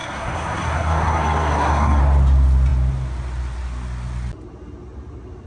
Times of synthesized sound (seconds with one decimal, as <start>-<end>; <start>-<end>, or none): 0.0-2.0